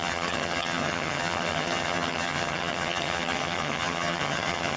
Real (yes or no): no